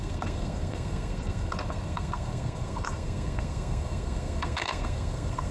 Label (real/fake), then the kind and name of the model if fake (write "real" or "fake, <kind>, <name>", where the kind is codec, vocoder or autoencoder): fake, codec, SNAC